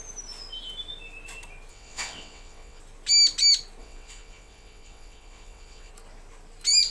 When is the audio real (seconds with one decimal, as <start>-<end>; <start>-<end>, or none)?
0.0-1.7; 2.8-3.8; 5.9-6.9

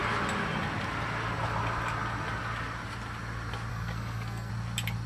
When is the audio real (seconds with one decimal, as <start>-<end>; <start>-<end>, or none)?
0.0-3.7; 4.5-5.1

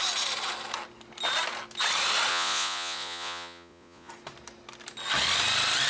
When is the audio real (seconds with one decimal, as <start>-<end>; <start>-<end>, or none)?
0.0-2.3; 4.1-5.9

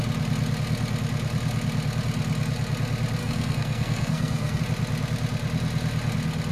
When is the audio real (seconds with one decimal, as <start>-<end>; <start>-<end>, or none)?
0.0-3.2; 4.6-6.5

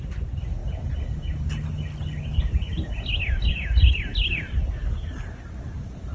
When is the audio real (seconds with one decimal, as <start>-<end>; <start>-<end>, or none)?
0.0-6.1

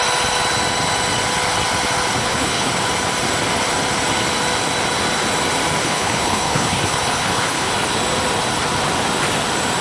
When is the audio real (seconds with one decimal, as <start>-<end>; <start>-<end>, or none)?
0.0-2.2; 2.7-5.8; 7.7-9.8

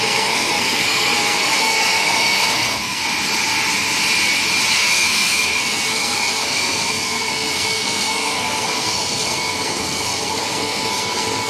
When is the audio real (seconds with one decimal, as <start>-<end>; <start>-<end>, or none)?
3.0-4.7

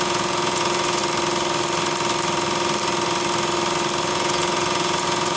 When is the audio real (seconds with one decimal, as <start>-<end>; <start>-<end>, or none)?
1.0-4.1